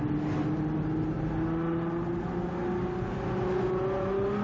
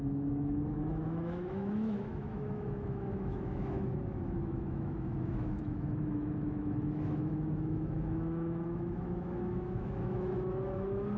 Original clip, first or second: first